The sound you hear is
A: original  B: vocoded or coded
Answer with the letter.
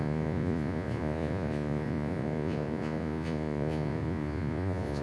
B